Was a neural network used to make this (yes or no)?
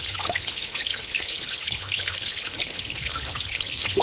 yes